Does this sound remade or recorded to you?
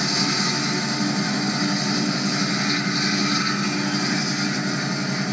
recorded